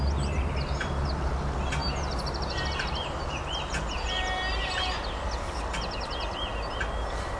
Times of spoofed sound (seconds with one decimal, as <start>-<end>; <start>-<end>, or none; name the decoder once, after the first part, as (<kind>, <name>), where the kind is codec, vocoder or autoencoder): none